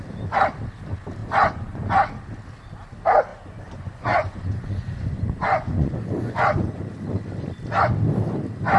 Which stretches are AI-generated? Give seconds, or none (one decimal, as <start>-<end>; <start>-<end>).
1.2-1.9; 3.3-6.8